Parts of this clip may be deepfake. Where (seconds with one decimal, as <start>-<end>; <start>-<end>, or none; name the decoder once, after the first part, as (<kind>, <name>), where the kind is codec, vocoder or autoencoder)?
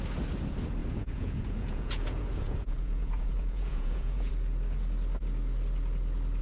0.8-4.3 (vocoder, Vocos)